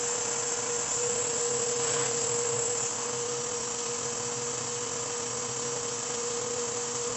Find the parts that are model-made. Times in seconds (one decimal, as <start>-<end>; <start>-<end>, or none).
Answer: none